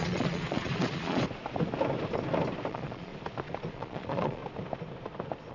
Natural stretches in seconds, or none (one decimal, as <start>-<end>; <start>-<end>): 1.2-2.7; 3.1-3.7; 4.4-5.5